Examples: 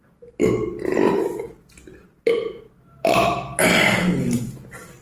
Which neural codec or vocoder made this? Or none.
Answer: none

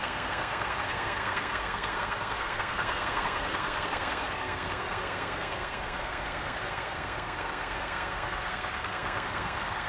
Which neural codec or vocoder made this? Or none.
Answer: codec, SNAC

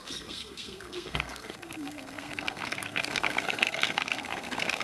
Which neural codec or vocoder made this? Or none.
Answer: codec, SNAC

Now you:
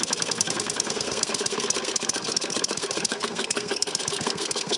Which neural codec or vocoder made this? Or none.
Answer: codec, SNAC